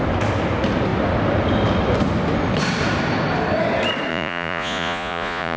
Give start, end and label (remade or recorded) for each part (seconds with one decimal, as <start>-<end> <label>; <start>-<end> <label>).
0.0-4.1 recorded; 4.1-5.6 remade